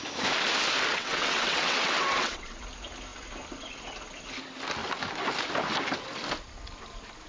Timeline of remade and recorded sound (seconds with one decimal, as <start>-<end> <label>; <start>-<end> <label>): 0.0-0.9 recorded; 0.9-2.6 remade; 2.6-7.3 recorded